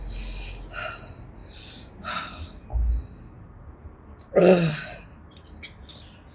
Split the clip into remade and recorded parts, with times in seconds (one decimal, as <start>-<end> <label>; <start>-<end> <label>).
0.0-1.4 recorded; 1.4-2.0 remade; 2.0-3.8 recorded; 3.8-5.1 remade; 5.1-6.3 recorded